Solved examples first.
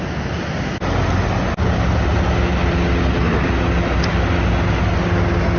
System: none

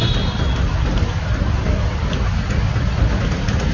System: none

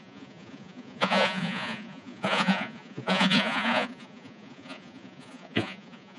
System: vocoder, Vocos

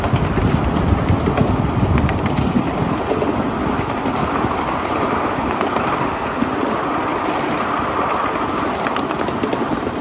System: none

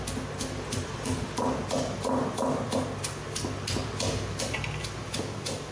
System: none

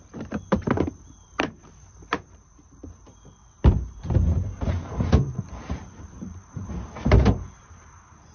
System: vocoder, BigVGAN v2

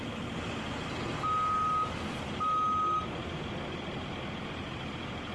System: none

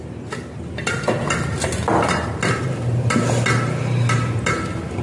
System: none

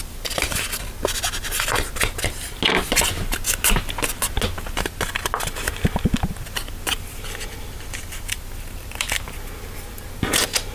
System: none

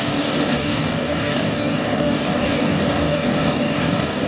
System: codec, DAC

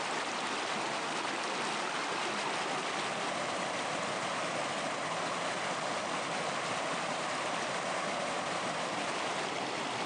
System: none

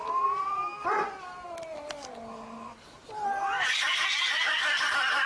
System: none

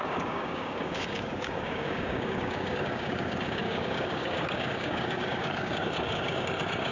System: codec, DAC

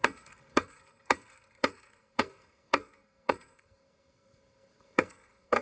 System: codec, SNAC